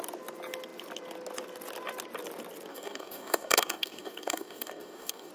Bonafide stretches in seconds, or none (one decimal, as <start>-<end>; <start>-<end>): 0.0-2.7